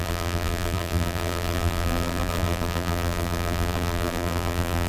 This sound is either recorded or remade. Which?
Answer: remade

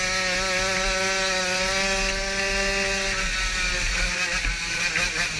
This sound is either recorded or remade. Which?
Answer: recorded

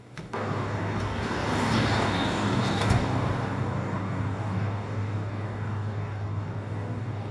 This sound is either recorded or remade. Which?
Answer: remade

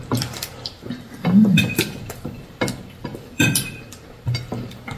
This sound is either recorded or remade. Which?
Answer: remade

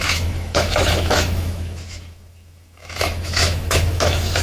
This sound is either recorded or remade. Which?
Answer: remade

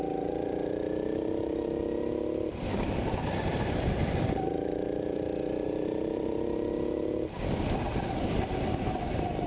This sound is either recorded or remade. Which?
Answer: remade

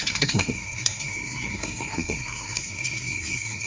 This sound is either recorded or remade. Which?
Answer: remade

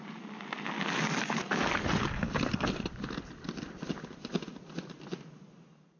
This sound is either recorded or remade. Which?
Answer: recorded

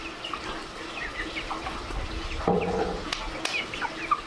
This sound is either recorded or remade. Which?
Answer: recorded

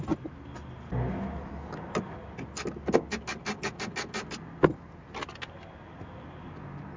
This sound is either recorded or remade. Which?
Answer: recorded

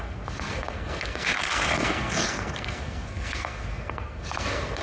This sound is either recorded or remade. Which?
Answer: remade